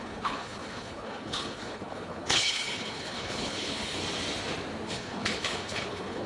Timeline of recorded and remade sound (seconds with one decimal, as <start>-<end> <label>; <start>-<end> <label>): 0.0-4.0 remade; 4.0-4.9 recorded; 4.9-6.3 remade